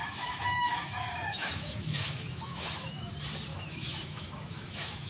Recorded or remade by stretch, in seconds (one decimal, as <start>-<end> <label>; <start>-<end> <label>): 0.0-3.1 remade; 3.1-3.5 recorded; 3.5-5.1 remade